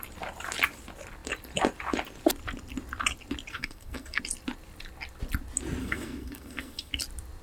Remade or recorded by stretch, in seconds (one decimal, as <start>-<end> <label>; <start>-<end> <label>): 0.0-3.5 recorded; 3.5-4.2 remade; 4.2-5.8 recorded; 5.8-6.9 remade; 6.9-7.4 recorded